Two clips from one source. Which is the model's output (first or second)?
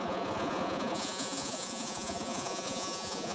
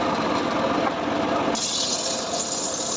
first